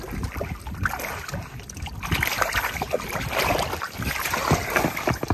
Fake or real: real